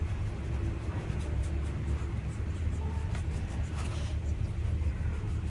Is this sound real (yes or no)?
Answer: yes